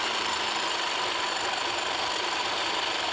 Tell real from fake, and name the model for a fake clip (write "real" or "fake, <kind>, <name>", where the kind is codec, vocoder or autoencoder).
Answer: real